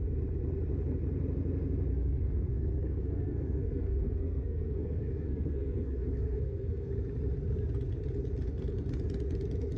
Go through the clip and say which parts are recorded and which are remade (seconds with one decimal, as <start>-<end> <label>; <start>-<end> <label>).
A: 0.0-1.9 recorded; 1.9-6.9 remade; 6.9-9.8 recorded